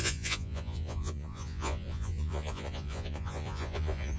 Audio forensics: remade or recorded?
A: remade